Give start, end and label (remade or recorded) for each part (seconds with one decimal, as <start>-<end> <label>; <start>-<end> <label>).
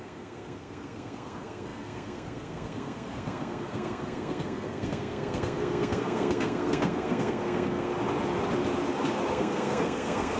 0.0-7.9 remade; 7.9-9.3 recorded; 9.3-10.4 remade